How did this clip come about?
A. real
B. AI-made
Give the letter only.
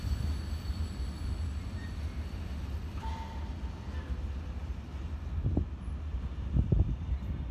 A